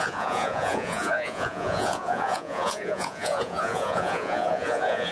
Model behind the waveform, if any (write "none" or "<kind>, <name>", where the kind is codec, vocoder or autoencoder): vocoder, Vocos